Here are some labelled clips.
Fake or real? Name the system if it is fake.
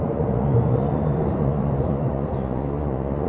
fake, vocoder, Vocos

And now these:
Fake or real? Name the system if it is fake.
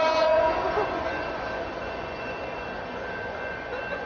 fake, vocoder, Vocos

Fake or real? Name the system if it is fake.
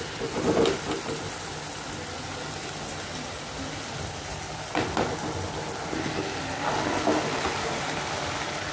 real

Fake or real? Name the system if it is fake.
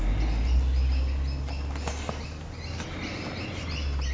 real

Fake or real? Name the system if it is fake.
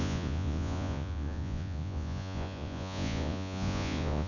fake, vocoder, Vocos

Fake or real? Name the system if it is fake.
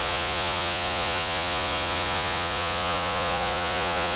fake, vocoder, Vocos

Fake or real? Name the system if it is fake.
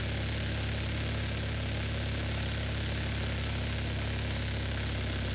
real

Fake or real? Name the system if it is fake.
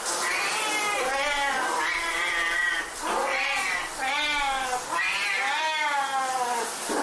real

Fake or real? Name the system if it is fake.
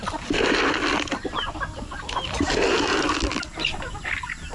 real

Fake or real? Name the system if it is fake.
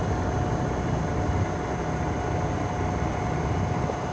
real